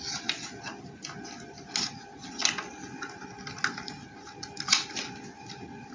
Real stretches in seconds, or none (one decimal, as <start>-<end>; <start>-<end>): 0.0-5.9